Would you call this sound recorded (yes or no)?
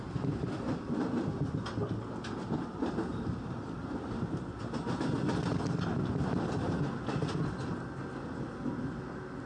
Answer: yes